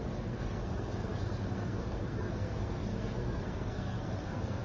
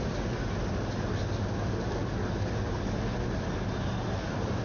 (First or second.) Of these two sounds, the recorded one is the second